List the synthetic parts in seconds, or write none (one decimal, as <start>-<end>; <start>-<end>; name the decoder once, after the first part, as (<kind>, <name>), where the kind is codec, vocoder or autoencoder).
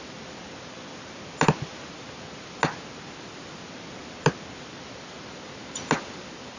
none